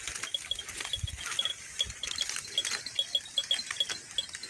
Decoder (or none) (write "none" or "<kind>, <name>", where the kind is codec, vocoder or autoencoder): none